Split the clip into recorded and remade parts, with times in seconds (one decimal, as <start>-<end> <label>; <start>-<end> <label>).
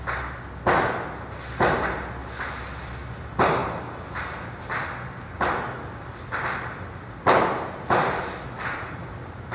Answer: 0.0-9.5 recorded